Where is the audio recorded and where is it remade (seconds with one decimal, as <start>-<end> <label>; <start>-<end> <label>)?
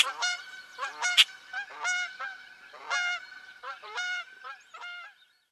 0.0-1.5 remade; 1.5-3.4 recorded; 3.4-5.5 remade